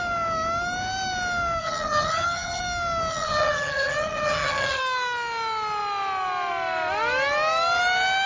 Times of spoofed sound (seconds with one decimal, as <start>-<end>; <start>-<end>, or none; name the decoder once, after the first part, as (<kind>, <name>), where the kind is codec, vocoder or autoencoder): 1.6-2.6 (vocoder, HiFi-GAN); 3.1-4.8